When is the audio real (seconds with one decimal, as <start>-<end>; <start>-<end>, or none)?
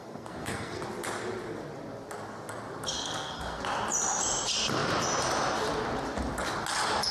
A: 0.8-2.9; 3.6-7.1